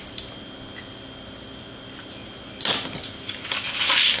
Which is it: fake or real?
real